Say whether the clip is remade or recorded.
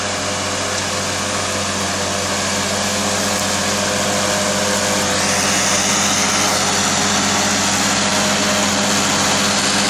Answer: recorded